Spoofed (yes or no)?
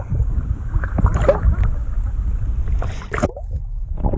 no